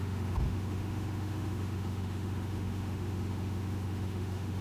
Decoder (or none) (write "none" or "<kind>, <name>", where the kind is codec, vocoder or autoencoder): autoencoder, DAC-VAE